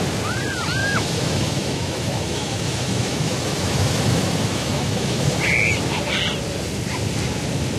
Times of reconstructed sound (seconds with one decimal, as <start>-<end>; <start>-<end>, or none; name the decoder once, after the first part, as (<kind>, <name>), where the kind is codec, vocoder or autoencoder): 0.8-5.4 (autoencoder, DAC-VAE)